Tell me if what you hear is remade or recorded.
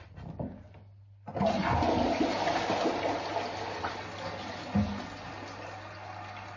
recorded